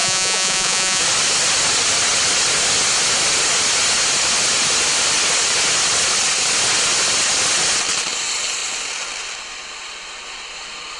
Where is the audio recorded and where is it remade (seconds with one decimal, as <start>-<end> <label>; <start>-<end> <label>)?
0.0-1.0 remade; 1.0-11.0 recorded